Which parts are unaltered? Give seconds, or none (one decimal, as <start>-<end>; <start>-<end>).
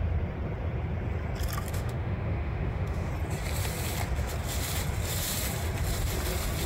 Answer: 0.0-1.7; 3.1-6.7